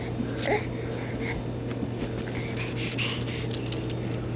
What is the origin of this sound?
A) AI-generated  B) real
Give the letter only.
B